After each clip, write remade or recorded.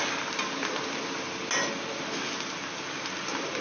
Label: recorded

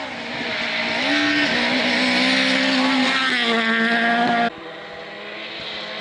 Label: recorded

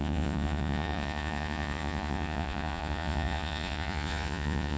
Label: remade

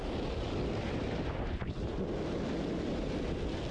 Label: recorded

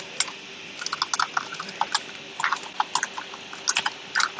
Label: recorded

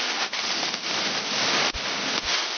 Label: recorded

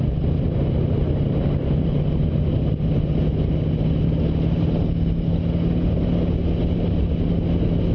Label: recorded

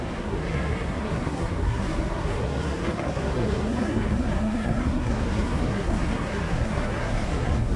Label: remade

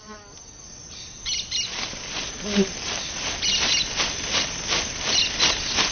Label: recorded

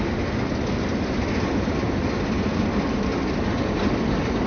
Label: recorded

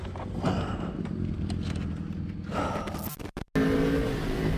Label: recorded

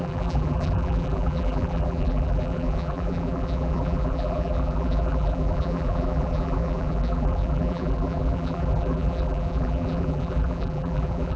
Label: remade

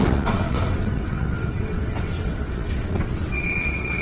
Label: remade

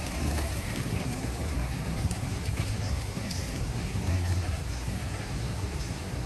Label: remade